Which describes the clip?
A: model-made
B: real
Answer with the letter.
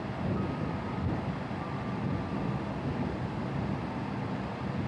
B